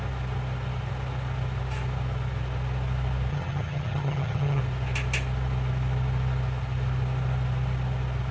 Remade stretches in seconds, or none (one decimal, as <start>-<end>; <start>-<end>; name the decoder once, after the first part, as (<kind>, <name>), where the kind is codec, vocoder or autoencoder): 3.3-4.6 (vocoder, HiFi-GAN)